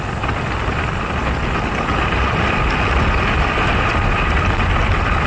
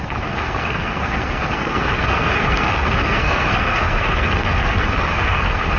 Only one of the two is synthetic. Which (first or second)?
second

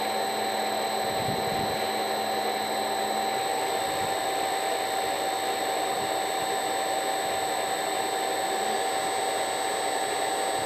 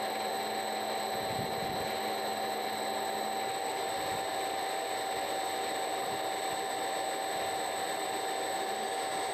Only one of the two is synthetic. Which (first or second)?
second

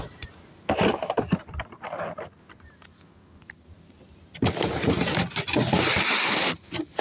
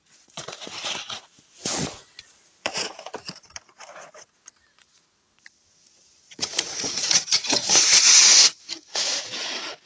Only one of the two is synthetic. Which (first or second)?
second